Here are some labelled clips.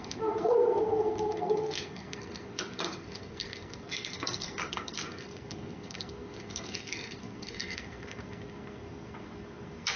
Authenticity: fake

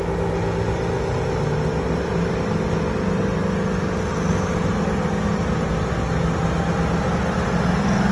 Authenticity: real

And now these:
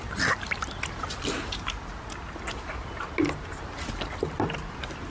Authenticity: real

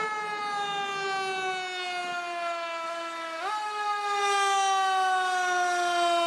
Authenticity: real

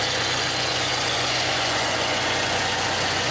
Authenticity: fake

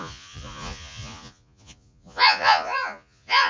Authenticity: fake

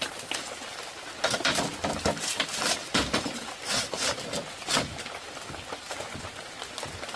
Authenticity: real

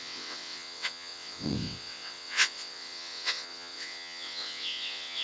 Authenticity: fake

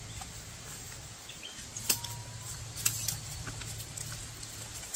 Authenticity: real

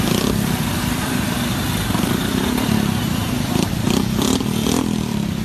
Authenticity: fake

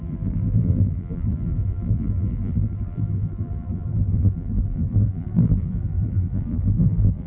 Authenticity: fake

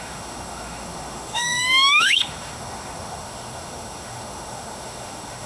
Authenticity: fake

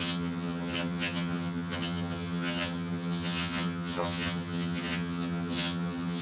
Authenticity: fake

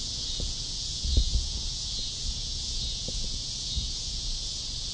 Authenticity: fake